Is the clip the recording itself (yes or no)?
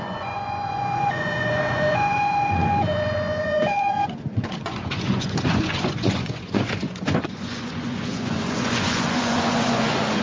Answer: no